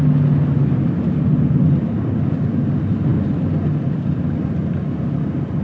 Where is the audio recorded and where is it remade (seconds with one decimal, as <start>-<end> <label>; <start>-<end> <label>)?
0.0-5.6 recorded